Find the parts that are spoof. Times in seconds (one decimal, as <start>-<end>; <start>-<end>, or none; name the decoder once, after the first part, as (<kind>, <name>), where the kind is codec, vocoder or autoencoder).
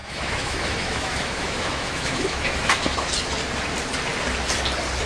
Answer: 0.0-3.1 (autoencoder, DAC-VAE)